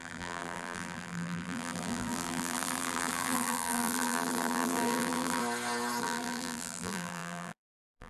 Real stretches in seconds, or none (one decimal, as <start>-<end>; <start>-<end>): 5.4-6.0